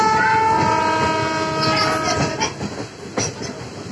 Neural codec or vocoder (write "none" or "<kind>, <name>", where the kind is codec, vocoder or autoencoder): none